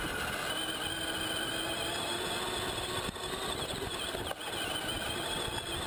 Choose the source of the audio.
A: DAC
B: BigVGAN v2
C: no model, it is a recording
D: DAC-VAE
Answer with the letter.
C